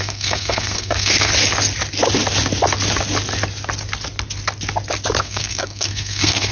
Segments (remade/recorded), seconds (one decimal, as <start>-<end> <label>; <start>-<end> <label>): 0.0-1.3 remade; 1.3-5.2 recorded; 5.2-6.5 remade